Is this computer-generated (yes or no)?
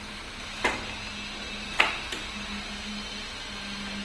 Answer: no